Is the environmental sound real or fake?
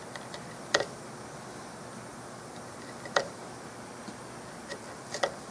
real